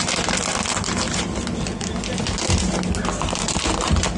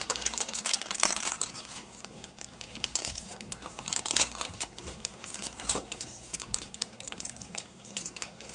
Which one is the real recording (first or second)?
first